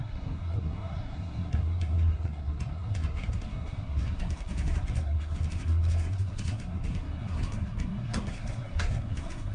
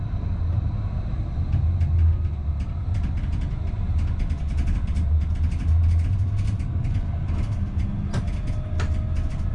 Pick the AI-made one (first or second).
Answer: first